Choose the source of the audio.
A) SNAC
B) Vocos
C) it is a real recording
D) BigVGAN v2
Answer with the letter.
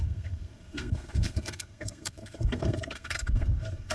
A